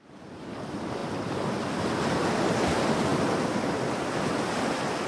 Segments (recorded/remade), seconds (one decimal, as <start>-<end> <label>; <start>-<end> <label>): 0.0-5.1 recorded